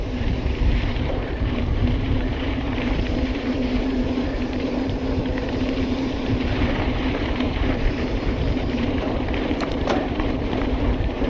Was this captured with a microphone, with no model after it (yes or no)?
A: no